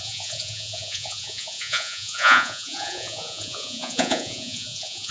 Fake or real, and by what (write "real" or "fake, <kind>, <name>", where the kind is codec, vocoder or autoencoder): fake, vocoder, Vocos